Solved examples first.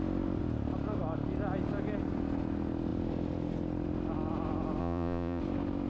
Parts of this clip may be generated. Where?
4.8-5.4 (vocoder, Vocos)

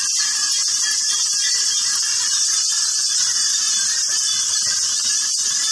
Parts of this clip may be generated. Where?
none

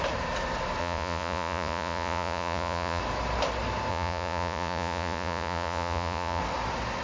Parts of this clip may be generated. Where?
0.8-3.0 (vocoder, Vocos); 3.9-6.4